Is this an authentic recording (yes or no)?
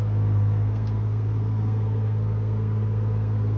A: no